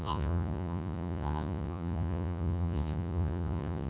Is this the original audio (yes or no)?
no